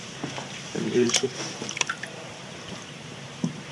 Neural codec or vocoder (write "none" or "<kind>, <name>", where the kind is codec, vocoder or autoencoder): vocoder, BigVGAN v2